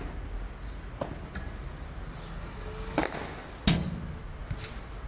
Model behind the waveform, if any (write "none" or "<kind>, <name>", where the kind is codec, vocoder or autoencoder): none